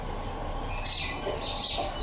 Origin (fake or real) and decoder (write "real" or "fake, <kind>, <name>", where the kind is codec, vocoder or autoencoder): real